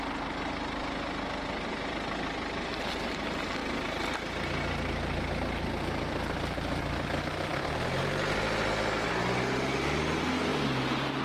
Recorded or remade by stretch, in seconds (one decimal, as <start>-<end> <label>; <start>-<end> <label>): 0.0-11.2 recorded